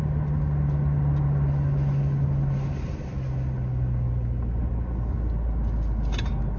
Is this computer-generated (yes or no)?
no